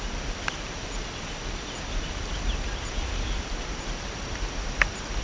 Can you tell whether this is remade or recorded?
recorded